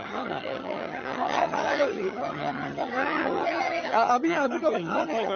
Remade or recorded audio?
remade